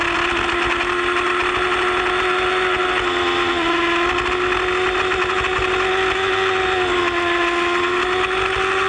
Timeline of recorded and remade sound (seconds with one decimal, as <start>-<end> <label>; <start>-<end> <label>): 0.0-8.9 recorded